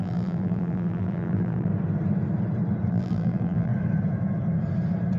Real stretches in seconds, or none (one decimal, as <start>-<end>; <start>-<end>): 1.7-2.9; 3.7-5.2